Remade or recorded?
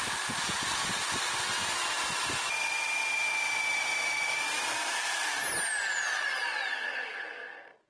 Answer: recorded